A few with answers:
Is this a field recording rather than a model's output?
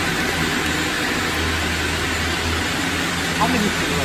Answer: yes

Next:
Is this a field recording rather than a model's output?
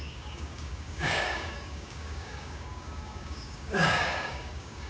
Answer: no